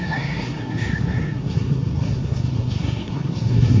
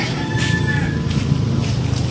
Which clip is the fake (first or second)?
first